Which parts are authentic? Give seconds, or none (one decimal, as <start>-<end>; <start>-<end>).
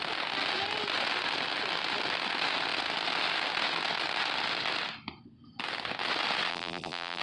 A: 0.0-6.5